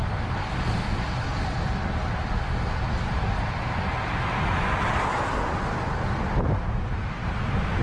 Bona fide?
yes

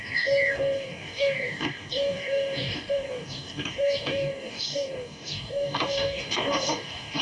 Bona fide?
no